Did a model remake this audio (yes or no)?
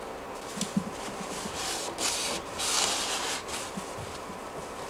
no